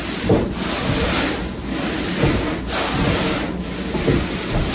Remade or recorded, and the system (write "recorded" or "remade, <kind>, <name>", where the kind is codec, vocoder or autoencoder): recorded